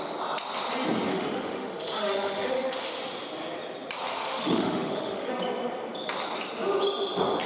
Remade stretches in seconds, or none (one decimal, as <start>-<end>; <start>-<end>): 1.1-3.0; 4.2-5.3